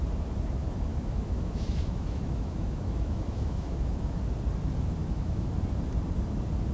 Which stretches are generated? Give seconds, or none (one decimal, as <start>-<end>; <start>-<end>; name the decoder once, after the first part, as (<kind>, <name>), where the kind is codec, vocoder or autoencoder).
0.9-4.2 (autoencoder, DAC-VAE); 5.0-5.5